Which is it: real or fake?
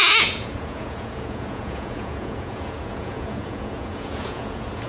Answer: fake